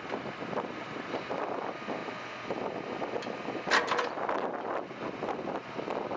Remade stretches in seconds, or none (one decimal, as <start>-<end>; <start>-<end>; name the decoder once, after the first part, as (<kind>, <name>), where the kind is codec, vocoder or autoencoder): none